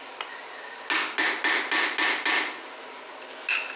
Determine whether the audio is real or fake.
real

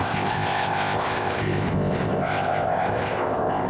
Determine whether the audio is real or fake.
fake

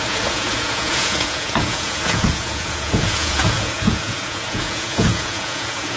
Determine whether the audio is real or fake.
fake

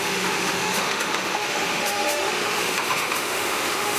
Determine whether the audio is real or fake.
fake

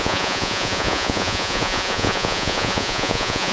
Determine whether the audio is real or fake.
fake